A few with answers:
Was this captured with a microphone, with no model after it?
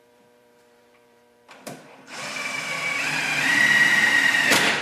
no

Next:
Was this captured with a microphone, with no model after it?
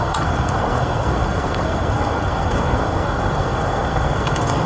no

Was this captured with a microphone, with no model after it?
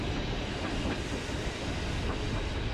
yes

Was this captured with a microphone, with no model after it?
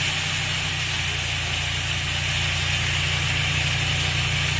yes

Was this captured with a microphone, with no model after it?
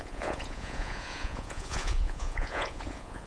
no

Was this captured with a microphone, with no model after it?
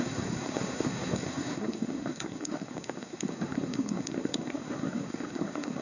no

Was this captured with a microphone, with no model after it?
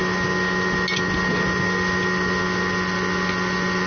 yes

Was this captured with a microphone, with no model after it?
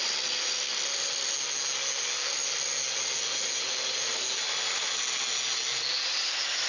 yes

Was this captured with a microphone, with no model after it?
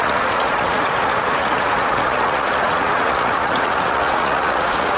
no